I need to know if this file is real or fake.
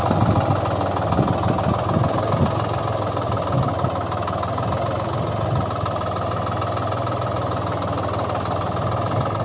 real